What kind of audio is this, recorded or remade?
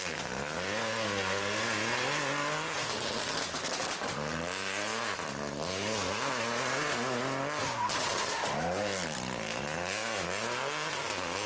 recorded